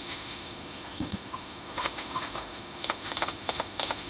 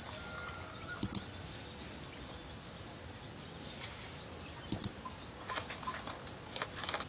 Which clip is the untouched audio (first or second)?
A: second